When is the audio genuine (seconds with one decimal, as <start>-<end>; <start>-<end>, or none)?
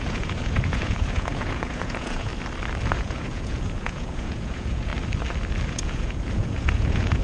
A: 2.3-2.9; 4.9-5.7